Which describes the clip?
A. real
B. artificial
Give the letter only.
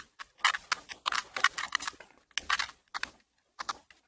A